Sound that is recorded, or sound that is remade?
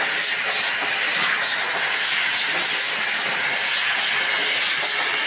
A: recorded